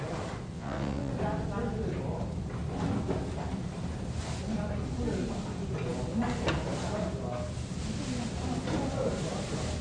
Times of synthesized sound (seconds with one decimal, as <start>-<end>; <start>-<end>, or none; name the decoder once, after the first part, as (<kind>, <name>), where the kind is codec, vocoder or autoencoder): 0.5-1.1 (vocoder, WaveNeXt)